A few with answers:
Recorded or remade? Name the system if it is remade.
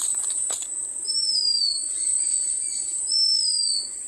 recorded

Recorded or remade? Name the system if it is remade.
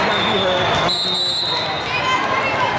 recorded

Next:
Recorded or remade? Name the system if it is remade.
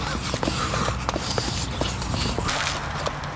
recorded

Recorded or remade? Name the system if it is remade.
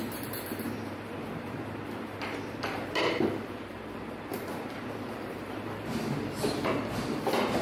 remade, vocoder, BigVGAN v2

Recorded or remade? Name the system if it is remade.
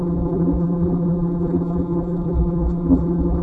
remade, vocoder, BigVGAN v2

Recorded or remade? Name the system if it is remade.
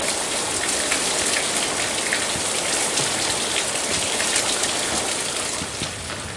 recorded